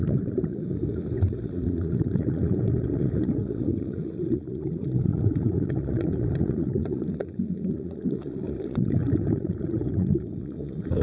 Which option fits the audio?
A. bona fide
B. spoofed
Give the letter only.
B